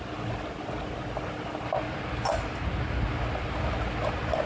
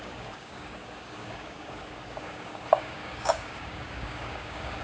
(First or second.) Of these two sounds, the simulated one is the second